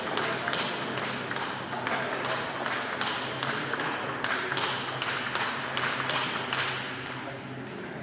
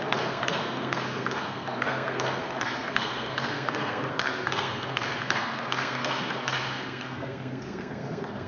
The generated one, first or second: second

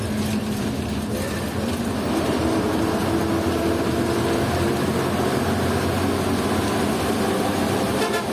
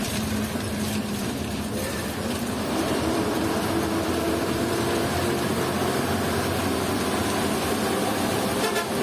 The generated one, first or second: second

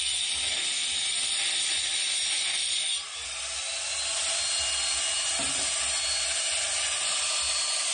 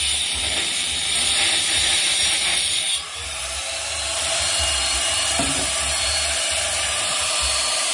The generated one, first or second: second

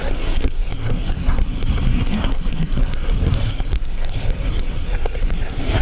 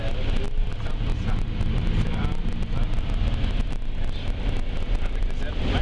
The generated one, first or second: first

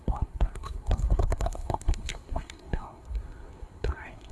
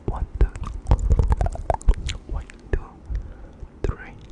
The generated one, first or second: first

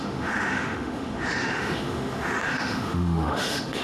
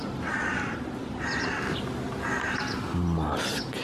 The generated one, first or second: first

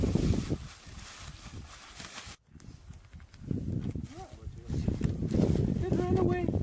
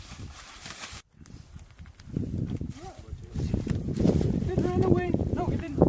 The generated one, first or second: second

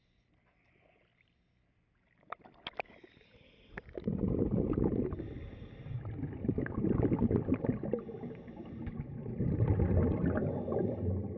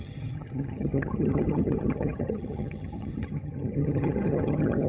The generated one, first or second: second